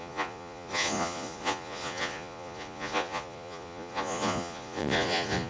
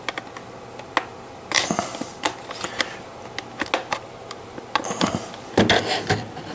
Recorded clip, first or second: second